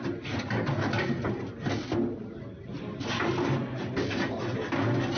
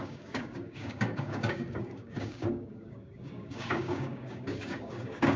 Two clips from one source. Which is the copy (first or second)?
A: second